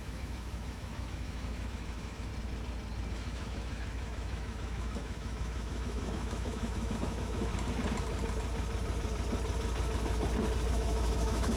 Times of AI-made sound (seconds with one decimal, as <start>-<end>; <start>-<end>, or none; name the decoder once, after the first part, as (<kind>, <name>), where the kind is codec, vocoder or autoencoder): 0.0-2.3 (autoencoder, DAC-VAE); 3.1-7.5; 10.7-11.6